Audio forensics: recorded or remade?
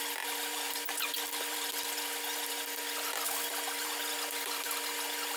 recorded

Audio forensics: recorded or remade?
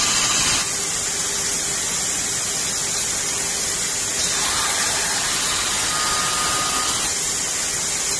recorded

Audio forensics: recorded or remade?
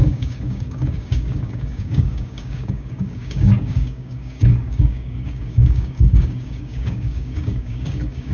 remade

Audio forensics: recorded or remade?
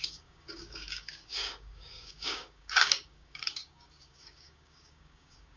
remade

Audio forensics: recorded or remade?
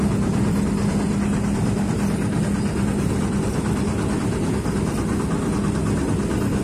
recorded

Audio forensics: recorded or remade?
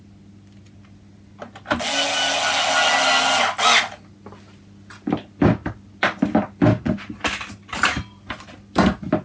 recorded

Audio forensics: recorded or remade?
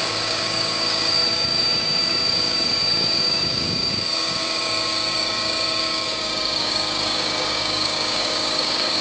remade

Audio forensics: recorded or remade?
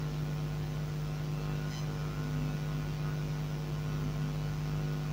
recorded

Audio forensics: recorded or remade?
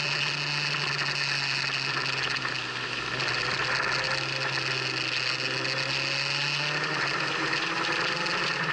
recorded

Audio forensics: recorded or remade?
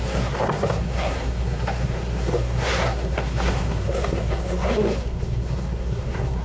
remade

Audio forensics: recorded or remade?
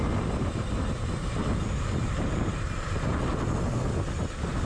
recorded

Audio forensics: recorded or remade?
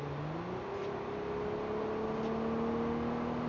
recorded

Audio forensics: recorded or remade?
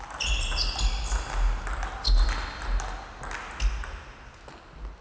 recorded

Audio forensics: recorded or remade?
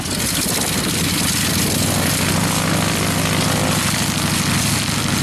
recorded